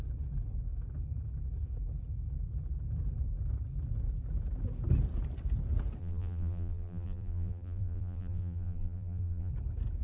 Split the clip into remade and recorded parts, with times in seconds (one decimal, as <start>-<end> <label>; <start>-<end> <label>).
0.0-6.0 recorded; 6.0-9.5 remade; 9.5-10.0 recorded